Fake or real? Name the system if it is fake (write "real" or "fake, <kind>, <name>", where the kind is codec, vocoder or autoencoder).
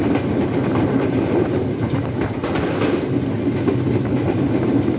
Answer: real